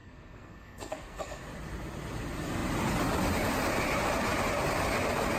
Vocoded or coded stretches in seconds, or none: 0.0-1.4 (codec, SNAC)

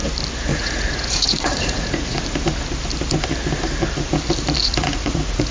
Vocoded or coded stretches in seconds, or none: 0.5-2.2 (vocoder, Vocos); 4.6-5.5